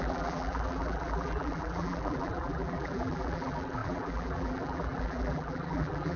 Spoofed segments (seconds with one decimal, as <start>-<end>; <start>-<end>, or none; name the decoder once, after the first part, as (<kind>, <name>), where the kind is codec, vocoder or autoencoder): 0.0-6.2 (vocoder, BigVGAN v2)